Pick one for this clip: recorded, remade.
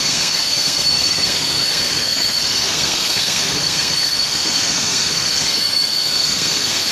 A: remade